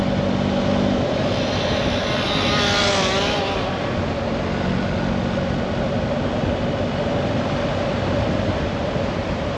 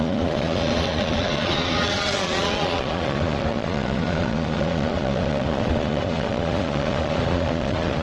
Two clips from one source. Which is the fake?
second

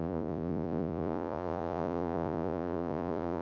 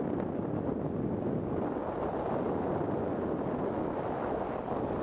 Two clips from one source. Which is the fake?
first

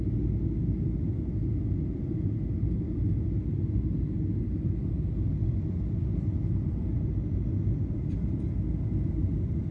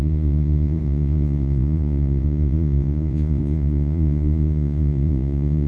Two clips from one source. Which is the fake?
second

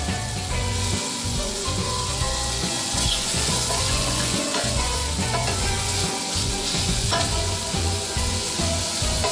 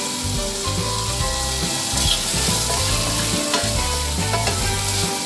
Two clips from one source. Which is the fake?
first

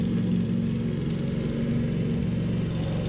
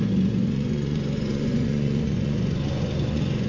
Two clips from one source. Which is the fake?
second